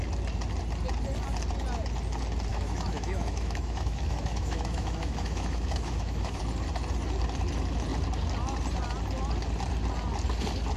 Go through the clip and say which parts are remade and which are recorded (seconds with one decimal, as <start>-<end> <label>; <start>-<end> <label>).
0.0-2.5 recorded; 2.5-6.4 remade; 6.4-10.8 recorded